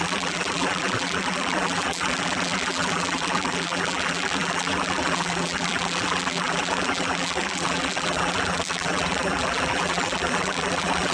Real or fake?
fake